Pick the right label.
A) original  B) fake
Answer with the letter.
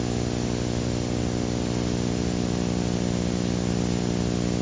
A